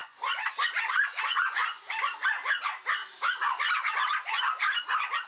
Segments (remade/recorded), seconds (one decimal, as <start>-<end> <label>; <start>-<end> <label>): 0.0-2.3 remade; 2.3-5.3 recorded